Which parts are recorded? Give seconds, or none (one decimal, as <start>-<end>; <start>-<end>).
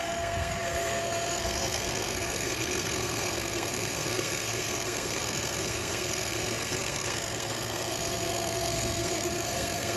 none